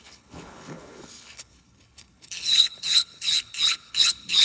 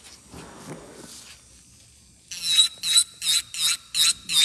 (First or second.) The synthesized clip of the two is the first